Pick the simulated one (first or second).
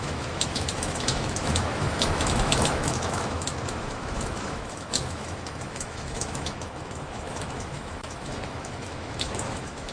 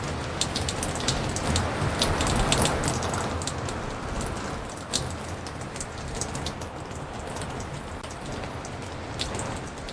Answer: first